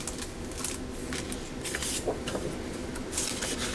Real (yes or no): yes